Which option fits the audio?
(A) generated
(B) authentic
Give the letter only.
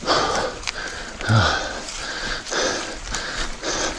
B